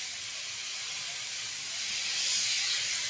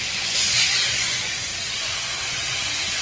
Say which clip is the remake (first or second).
second